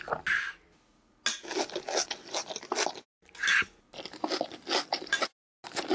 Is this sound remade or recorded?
recorded